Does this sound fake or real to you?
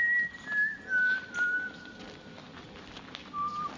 real